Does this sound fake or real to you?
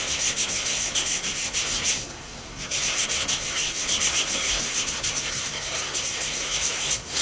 fake